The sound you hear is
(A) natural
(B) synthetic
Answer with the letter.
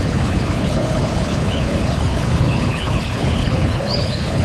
B